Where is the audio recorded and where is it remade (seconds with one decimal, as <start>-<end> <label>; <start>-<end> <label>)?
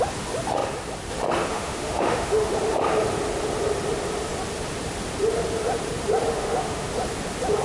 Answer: 0.0-1.5 recorded; 1.5-2.5 remade; 2.5-6.3 recorded; 6.3-6.9 remade; 6.9-7.6 recorded